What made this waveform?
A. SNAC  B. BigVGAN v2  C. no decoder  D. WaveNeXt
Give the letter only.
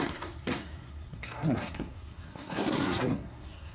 A